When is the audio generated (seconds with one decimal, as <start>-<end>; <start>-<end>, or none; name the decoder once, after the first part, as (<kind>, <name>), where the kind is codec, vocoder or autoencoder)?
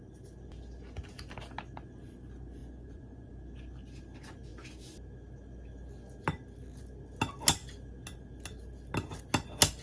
2.6-3.3 (vocoder, Vocos)